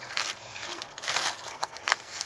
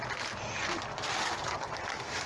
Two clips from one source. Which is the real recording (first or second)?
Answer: second